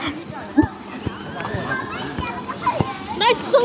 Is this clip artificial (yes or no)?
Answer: no